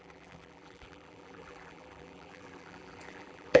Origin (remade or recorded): remade